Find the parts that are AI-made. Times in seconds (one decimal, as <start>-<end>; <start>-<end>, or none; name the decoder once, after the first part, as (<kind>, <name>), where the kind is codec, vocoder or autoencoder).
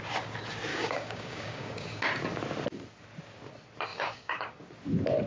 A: 0.7-2.0 (codec, DAC); 3.9-4.6